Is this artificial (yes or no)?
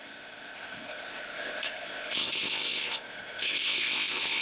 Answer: yes